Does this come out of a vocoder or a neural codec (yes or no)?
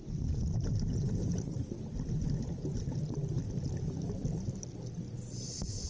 no